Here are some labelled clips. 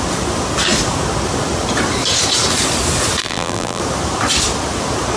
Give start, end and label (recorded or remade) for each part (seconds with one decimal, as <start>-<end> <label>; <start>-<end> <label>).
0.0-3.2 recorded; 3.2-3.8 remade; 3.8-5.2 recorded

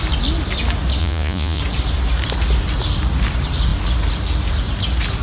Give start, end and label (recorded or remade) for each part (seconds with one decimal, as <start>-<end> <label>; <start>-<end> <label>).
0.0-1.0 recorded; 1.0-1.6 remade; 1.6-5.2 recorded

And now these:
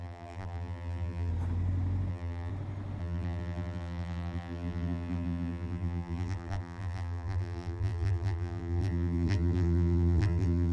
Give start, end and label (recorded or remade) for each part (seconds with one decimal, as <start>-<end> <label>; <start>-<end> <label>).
0.0-1.3 remade; 1.3-2.1 recorded; 2.1-2.5 remade; 2.5-3.0 recorded; 3.0-10.7 remade

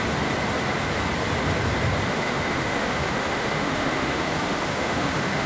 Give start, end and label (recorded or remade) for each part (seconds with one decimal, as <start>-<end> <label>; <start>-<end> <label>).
0.0-2.1 recorded; 2.1-5.5 remade